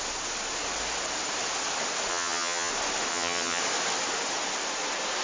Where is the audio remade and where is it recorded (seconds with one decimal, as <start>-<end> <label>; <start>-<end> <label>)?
0.0-2.1 recorded; 2.1-2.7 remade; 2.7-3.1 recorded; 3.1-3.6 remade; 3.6-5.2 recorded